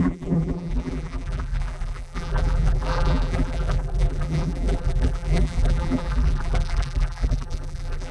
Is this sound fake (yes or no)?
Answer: yes